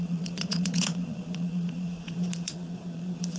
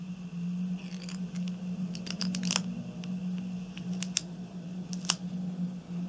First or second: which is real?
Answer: second